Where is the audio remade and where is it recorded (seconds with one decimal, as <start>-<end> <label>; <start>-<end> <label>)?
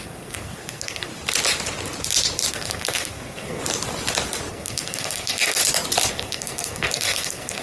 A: 0.0-1.1 remade; 1.1-2.5 recorded; 2.5-3.6 remade; 3.6-4.5 recorded; 4.5-5.6 remade; 5.6-6.1 recorded; 6.1-7.6 remade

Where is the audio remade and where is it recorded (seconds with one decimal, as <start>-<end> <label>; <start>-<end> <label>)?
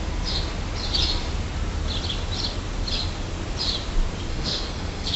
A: 0.0-4.3 recorded; 4.3-5.2 remade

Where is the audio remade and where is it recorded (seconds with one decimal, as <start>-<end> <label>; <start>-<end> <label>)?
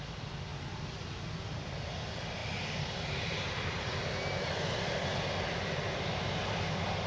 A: 0.0-7.1 recorded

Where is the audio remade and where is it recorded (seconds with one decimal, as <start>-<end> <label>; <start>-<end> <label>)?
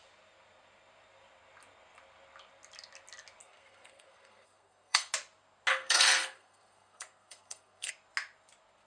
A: 0.0-3.4 recorded; 3.4-5.1 remade; 5.1-5.7 recorded; 5.7-7.9 remade; 7.9-8.9 recorded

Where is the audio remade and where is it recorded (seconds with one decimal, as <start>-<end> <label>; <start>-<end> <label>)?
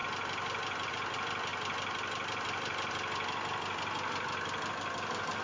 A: 0.0-5.4 recorded